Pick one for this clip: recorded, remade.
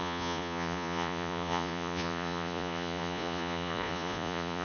remade